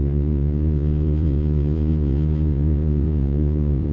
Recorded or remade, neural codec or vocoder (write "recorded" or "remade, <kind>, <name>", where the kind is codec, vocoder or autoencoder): remade, vocoder, Vocos